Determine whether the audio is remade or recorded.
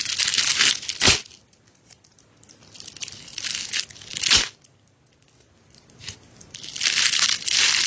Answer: recorded